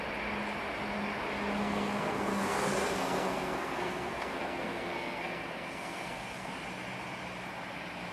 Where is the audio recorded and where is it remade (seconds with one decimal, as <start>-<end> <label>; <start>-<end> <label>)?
0.0-1.6 recorded; 1.6-6.5 remade; 6.5-8.1 recorded